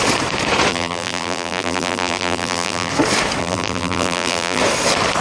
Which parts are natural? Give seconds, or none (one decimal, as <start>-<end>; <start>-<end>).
0.0-0.7; 2.9-3.4; 4.6-5.2